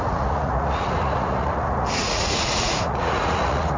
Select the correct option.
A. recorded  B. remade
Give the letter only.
B